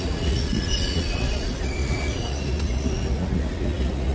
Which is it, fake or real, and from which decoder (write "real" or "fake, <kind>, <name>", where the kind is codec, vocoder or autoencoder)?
fake, vocoder, Vocos